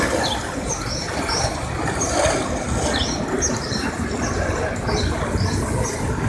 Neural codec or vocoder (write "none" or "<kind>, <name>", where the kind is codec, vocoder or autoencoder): none